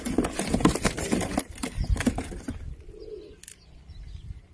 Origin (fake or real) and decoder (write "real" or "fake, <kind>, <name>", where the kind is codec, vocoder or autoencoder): real